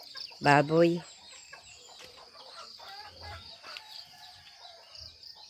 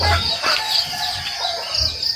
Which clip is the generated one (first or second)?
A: first